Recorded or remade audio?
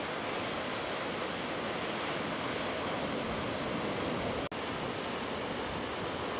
recorded